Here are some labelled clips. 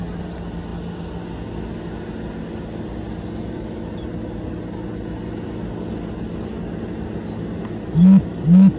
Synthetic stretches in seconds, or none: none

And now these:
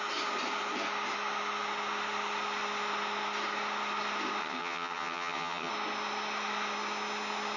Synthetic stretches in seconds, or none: 4.4-5.7 (vocoder, HiFi-GAN)

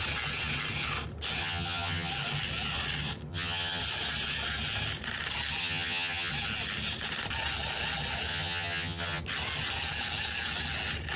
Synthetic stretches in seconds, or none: 1.4-2.1 (vocoder, HiFi-GAN); 3.3-3.8; 5.6-6.3; 8.3-9.2

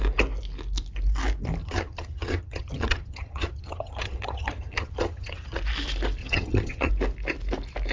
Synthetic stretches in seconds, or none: 1.6-5.6 (vocoder, HiFi-GAN); 6.2-6.9

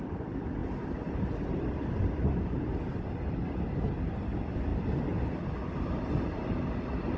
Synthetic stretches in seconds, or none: none